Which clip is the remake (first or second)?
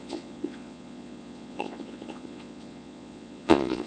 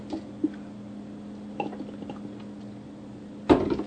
first